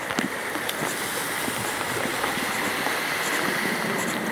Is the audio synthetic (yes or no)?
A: no